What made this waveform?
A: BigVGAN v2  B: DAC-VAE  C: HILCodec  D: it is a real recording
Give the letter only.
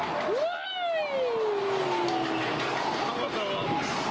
D